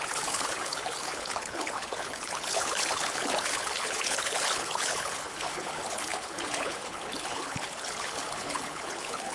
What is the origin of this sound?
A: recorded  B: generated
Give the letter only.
B